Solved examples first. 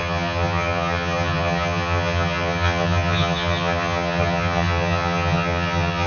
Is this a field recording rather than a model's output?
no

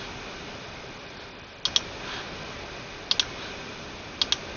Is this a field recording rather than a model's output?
yes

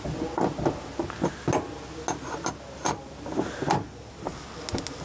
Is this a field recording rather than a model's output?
yes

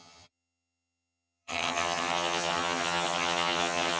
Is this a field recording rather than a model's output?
no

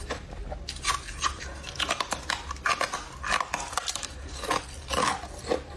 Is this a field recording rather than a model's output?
yes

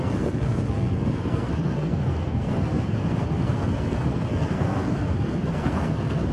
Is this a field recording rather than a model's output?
no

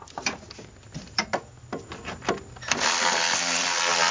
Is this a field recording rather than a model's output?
yes